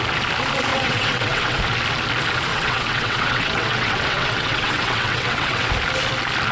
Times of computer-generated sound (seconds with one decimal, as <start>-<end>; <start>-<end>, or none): 0.7-1.6; 2.5-5.7

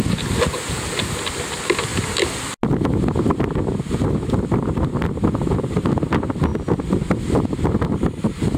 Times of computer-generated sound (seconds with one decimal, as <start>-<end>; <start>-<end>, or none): none

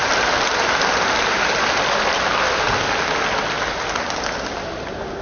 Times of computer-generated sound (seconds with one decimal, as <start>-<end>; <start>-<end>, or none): none

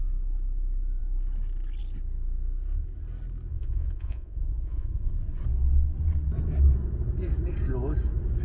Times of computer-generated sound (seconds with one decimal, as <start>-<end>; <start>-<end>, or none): 3.5-5.1

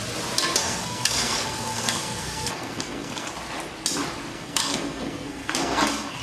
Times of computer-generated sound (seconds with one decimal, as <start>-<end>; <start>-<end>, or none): 0.6-3.3; 4.3-6.2